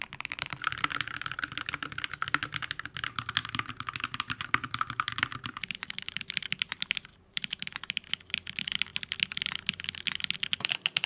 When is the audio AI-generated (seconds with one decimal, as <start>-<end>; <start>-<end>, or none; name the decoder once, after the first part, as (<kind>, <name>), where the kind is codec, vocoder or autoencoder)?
3.4-6.3 (vocoder, BigVGAN v2); 7.1-7.8